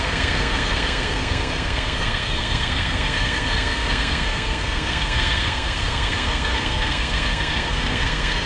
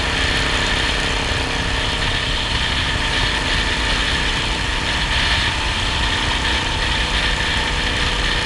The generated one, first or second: first